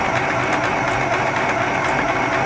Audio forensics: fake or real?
real